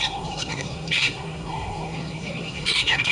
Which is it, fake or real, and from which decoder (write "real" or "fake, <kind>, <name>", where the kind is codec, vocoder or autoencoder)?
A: fake, codec, SNAC